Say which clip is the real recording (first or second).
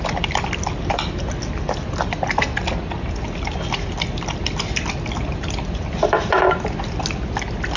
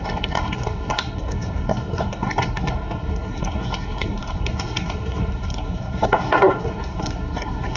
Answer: first